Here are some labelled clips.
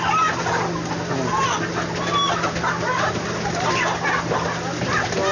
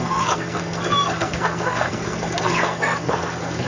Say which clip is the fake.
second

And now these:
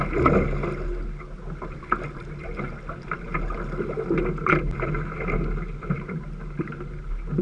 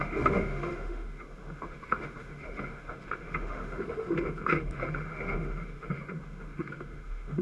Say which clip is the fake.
second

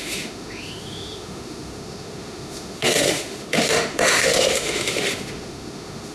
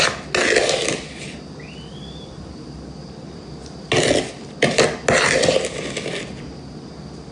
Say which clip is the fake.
first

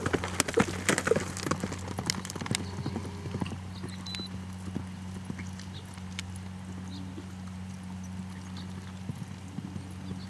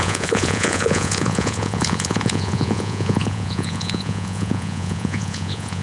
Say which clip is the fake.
second